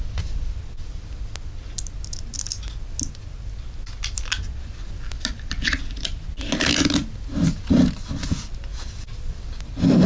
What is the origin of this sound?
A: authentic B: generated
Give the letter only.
A